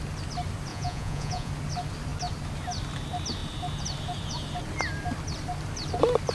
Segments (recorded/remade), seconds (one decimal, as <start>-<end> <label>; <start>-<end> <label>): 0.0-0.7 recorded; 0.7-1.5 remade; 1.5-6.3 recorded